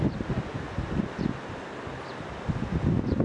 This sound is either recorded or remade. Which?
recorded